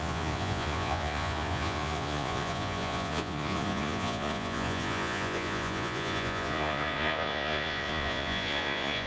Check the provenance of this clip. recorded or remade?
remade